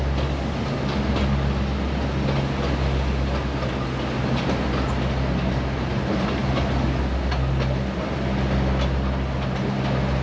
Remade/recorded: recorded